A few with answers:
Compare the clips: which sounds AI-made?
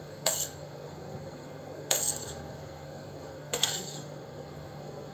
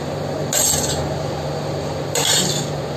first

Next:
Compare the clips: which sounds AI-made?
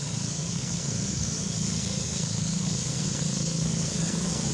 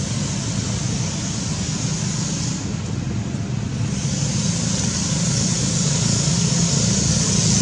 first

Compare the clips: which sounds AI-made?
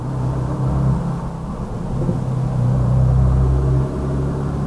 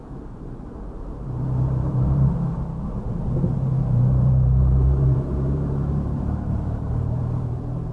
second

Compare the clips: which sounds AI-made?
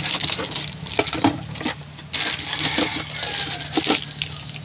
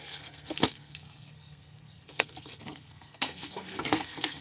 second